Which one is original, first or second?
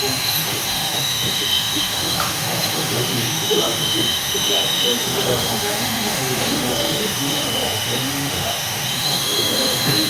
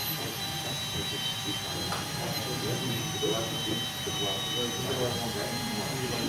second